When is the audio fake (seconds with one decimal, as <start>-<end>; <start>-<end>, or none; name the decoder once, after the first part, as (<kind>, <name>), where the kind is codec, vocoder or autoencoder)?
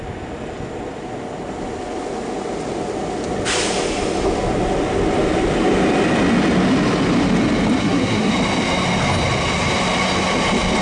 7.8-8.3 (codec, SNAC)